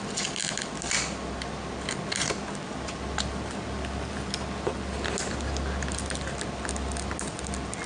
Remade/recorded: recorded